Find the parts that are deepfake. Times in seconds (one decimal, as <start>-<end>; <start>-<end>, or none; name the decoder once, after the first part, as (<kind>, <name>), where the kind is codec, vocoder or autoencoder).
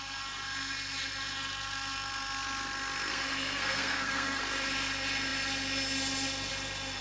3.1-4.4 (codec, SNAC)